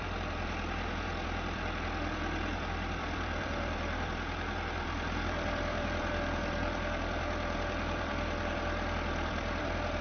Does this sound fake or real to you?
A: fake